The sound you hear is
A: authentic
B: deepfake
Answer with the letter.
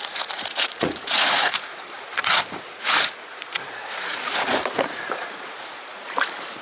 B